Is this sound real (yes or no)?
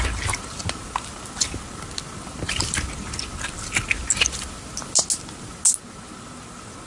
yes